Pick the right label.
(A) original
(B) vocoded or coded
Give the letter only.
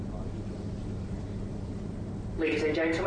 A